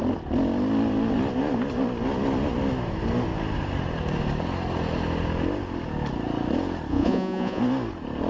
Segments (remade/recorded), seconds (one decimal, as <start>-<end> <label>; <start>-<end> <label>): 0.0-6.9 recorded; 6.9-7.6 remade; 7.6-8.3 recorded